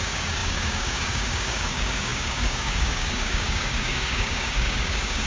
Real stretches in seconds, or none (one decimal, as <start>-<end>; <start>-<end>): none